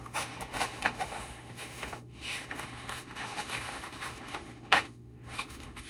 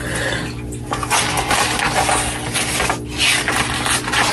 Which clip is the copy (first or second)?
first